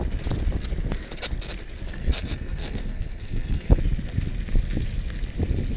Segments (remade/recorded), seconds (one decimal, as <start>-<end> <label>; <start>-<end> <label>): 0.0-1.9 recorded; 1.9-3.8 remade; 3.8-5.8 recorded